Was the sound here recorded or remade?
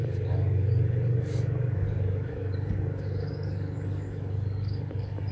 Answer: remade